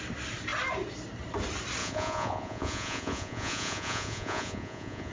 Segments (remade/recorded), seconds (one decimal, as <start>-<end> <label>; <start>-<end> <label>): 0.0-1.8 recorded; 1.8-5.1 remade